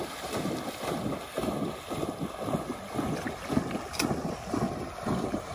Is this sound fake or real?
real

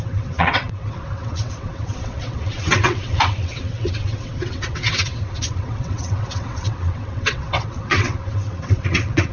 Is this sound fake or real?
fake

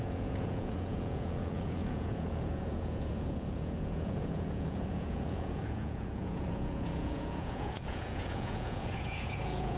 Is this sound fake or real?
fake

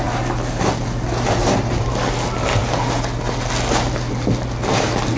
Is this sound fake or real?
real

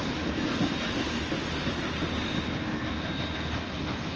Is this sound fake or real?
real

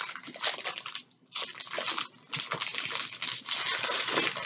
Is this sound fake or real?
real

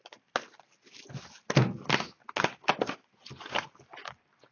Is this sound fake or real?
real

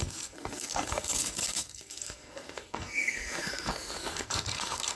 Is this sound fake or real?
fake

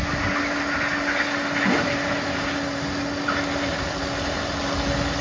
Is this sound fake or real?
real